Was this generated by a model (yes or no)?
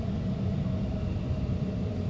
no